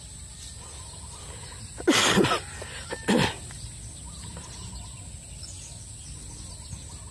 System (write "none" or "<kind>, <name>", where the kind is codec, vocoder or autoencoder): none